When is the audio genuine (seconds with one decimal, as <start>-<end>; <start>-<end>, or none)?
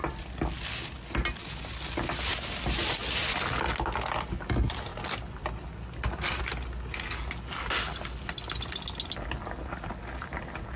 0.0-10.8